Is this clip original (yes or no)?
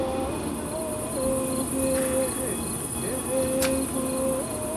yes